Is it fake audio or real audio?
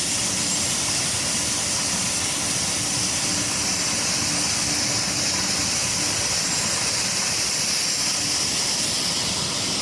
real